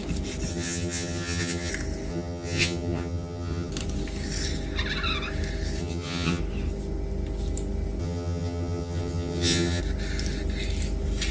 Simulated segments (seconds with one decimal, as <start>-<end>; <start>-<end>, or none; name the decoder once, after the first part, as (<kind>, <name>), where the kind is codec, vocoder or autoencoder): 0.5-1.7 (vocoder, HiFi-GAN); 2.1-3.7; 5.8-6.4; 8.0-9.8